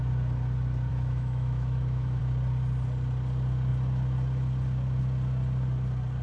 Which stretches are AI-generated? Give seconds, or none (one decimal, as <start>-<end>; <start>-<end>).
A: 0.9-2.2